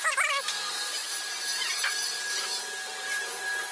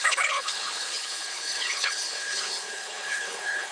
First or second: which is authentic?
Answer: first